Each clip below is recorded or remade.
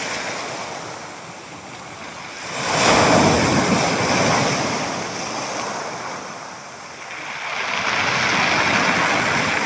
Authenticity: recorded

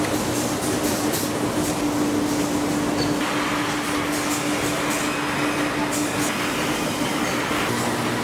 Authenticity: recorded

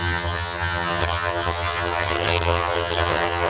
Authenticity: remade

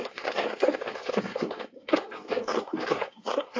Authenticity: remade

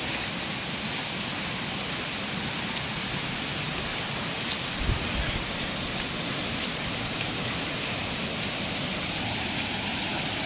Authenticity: recorded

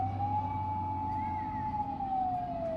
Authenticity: recorded